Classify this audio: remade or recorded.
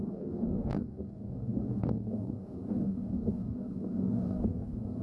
remade